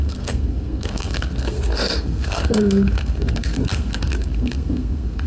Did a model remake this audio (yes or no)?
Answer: yes